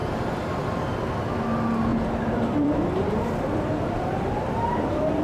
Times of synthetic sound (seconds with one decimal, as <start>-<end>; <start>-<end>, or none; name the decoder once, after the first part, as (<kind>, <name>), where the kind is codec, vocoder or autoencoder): 0.0-1.0 (vocoder, BigVGAN v2); 1.9-5.2